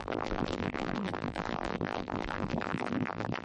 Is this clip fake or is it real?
fake